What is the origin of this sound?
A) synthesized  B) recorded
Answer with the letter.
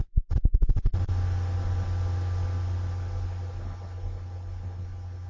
B